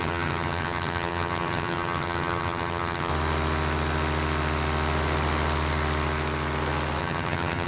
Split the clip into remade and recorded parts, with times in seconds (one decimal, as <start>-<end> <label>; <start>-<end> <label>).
0.0-3.1 remade; 3.1-7.0 recorded; 7.0-7.7 remade